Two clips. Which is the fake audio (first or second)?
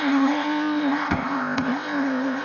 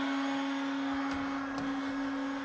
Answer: first